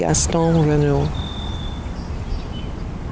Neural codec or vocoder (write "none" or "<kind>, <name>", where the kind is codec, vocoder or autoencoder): none